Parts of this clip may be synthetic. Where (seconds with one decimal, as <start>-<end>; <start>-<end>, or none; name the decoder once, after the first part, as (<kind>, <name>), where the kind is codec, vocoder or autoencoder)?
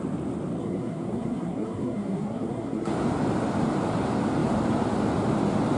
0.6-2.9 (codec, SNAC)